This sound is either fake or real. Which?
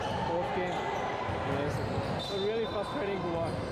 real